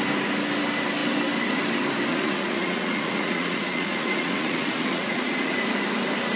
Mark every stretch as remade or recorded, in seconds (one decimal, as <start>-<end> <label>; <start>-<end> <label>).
0.0-2.1 recorded; 2.1-5.5 remade; 5.5-6.4 recorded